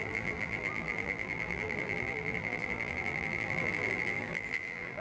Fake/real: fake